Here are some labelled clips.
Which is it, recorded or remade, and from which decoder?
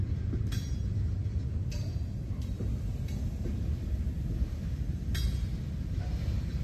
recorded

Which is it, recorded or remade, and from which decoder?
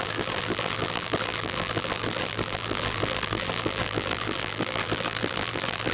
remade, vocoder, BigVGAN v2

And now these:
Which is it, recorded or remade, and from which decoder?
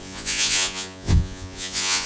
remade, vocoder, Vocos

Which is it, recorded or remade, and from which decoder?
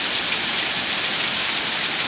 recorded